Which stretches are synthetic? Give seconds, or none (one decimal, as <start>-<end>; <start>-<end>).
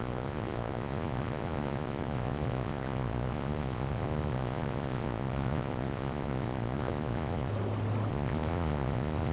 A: 0.0-7.5; 8.1-9.3